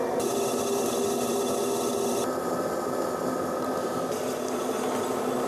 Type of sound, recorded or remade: recorded